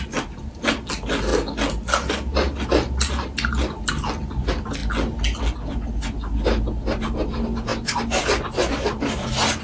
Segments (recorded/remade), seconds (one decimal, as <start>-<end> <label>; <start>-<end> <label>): 0.0-9.6 recorded